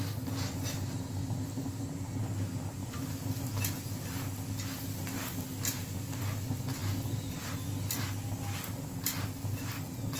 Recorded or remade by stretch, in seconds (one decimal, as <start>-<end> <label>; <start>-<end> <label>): 0.0-10.2 recorded